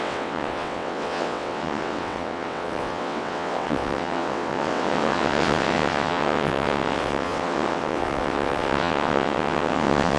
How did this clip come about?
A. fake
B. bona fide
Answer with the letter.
A